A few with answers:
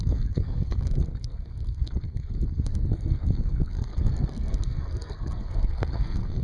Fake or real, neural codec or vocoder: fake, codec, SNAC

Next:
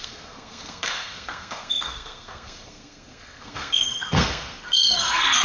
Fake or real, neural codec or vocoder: fake, codec, SNAC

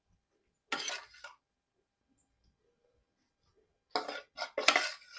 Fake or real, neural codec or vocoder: real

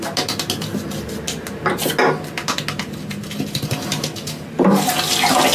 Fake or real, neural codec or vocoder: real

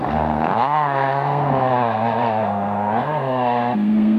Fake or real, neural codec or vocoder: fake, codec, SNAC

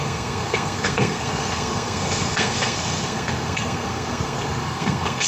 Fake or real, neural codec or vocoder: fake, codec, SNAC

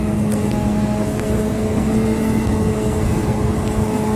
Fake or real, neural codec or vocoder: fake, codec, SNAC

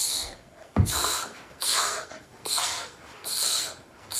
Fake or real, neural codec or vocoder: fake, codec, SNAC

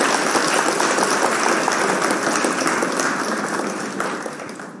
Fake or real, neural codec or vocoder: real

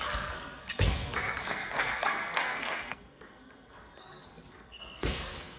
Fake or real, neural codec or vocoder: fake, codec, SNAC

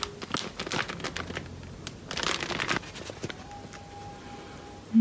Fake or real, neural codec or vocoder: real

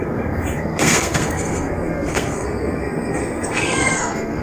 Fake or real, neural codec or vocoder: fake, codec, SNAC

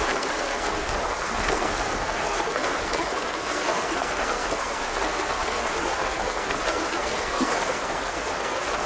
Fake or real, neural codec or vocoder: fake, codec, SNAC